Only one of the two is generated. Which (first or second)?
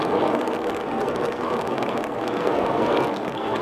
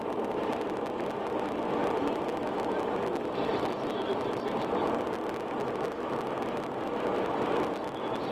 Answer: first